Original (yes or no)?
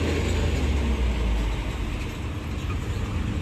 yes